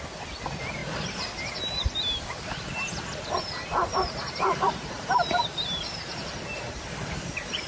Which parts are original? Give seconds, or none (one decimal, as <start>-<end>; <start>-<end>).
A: 0.0-3.9; 6.8-7.7